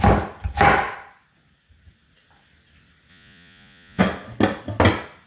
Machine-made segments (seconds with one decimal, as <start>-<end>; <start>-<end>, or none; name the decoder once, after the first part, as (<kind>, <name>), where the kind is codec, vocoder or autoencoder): 3.1-4.0 (vocoder, Vocos)